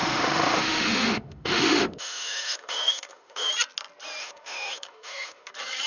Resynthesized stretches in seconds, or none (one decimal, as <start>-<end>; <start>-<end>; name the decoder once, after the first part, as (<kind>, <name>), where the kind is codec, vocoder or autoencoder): 0.0-3.5 (autoencoder, DAC-VAE); 4.2-5.5